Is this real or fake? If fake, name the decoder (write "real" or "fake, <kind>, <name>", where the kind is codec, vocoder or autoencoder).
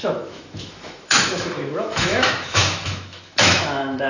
fake, autoencoder, DAC-VAE